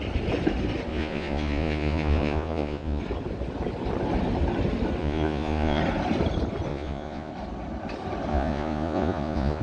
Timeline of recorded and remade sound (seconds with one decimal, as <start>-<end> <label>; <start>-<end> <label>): 0.0-0.9 recorded; 0.9-3.0 remade; 3.0-5.0 recorded; 5.0-5.8 remade; 5.8-6.7 recorded; 6.7-7.3 remade; 7.3-8.3 recorded; 8.3-9.6 remade